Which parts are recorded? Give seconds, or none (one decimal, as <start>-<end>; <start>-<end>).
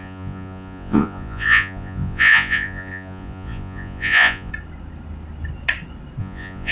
4.5-6.2